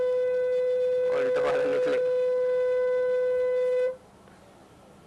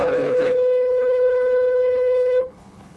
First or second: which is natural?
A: first